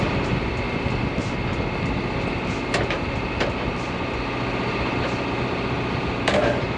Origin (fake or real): real